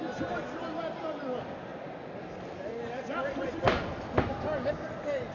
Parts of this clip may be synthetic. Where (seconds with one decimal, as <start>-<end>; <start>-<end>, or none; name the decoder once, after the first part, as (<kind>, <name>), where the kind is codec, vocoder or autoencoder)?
none